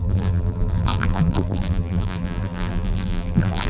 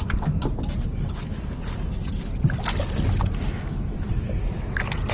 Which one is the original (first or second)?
second